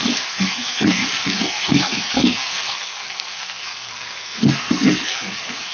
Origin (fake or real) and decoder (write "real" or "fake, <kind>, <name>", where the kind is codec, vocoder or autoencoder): fake, codec, SNAC